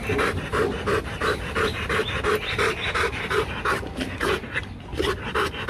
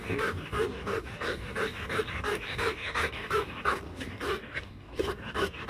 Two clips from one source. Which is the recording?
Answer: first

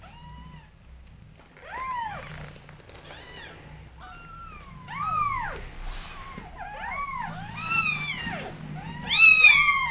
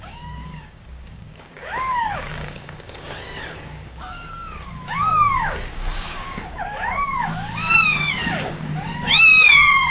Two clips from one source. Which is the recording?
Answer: first